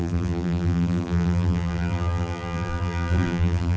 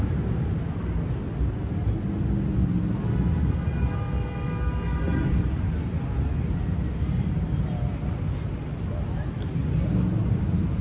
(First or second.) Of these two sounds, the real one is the second